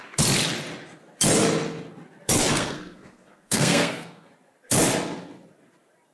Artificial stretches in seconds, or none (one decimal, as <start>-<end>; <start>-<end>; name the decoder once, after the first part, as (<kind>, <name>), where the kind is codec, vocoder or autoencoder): 2.5-4.3 (codec, SNAC)